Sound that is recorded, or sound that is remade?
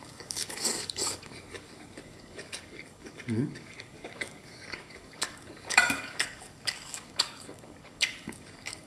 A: remade